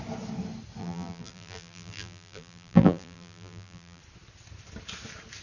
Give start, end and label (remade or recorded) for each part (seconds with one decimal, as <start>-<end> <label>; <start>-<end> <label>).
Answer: 0.0-0.8 recorded; 0.8-4.0 remade; 4.0-5.4 recorded